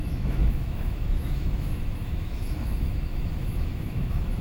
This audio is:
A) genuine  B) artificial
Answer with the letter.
B